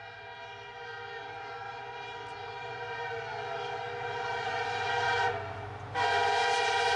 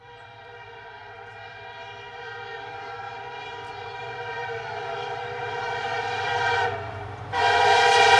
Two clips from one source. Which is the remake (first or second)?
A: second